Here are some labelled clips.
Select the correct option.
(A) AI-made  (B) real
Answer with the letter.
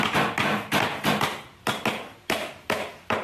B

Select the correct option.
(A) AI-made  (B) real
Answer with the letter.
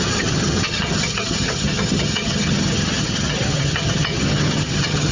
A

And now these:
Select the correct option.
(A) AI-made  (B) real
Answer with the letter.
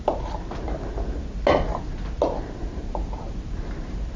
B